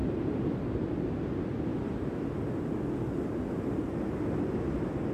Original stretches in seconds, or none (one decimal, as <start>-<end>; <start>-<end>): 0.0-5.1